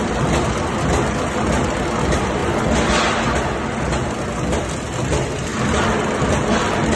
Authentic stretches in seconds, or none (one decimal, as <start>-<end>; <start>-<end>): 0.0-7.0